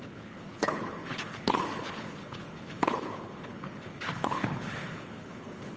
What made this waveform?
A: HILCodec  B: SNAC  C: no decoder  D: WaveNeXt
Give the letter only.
A